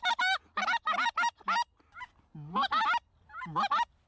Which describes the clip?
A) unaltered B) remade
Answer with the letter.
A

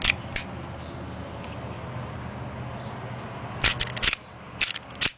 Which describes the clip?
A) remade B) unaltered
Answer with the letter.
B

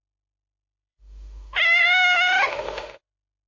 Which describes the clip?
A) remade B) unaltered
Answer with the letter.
A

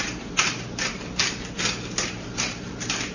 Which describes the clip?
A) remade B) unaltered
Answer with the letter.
B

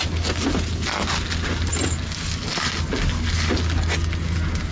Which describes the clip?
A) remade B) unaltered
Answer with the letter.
B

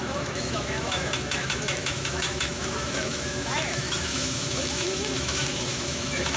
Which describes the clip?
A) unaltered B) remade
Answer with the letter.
B